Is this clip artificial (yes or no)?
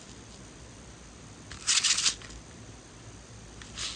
no